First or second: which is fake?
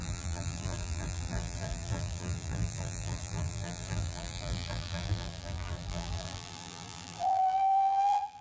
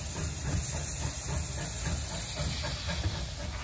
first